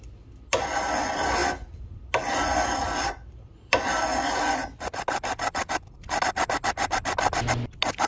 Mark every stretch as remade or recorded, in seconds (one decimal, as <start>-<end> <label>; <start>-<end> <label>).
0.0-8.1 recorded